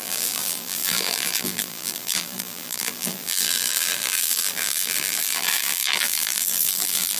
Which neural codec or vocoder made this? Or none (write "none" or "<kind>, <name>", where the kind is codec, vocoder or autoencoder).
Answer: vocoder, BigVGAN v2